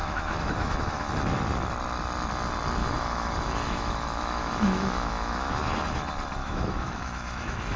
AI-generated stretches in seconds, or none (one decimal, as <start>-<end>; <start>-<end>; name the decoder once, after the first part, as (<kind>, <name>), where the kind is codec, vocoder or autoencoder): 0.0-1.1 (autoencoder, DAC-VAE); 2.8-5.5; 6.4-7.8